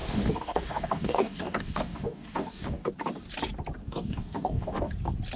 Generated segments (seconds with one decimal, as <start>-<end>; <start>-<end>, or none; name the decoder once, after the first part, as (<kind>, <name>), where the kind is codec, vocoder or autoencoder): 0.0-2.9 (codec, DAC); 3.8-4.9